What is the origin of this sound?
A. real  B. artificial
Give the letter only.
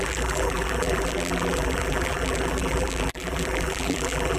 B